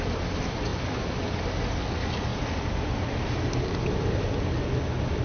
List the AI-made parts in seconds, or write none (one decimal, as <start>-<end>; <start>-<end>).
0.7-1.7; 2.3-3.1